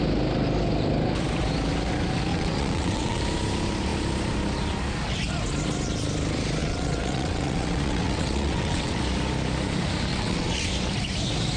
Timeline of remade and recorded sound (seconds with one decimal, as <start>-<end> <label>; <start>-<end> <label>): 0.0-2.3 recorded; 2.3-3.2 remade; 3.2-6.6 recorded; 6.6-9.0 remade; 9.0-10.1 recorded; 10.1-10.7 remade; 10.7-11.6 recorded